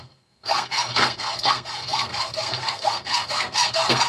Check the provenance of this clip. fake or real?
fake